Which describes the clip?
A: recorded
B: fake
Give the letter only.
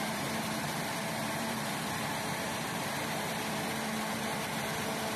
B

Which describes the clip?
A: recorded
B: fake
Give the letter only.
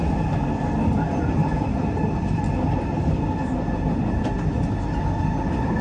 A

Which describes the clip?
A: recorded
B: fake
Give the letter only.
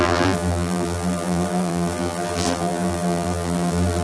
B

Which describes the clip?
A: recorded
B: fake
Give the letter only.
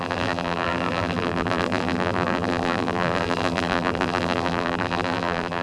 B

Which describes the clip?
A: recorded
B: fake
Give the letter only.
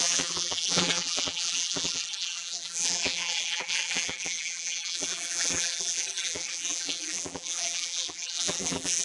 B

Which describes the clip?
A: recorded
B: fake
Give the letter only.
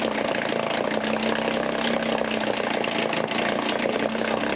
A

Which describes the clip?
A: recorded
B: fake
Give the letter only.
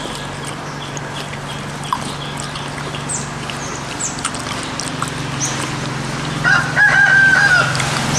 A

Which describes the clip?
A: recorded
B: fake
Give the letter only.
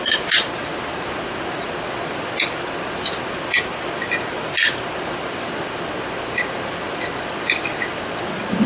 A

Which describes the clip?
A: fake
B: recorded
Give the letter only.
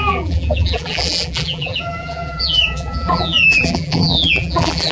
A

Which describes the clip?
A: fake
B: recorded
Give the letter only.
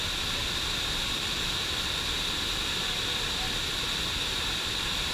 A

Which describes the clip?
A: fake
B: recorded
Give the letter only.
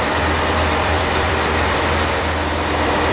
A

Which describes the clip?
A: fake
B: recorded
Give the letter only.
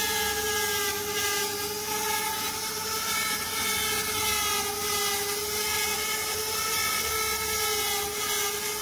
B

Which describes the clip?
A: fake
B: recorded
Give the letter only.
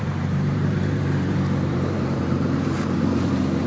A